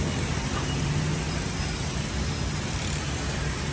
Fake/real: real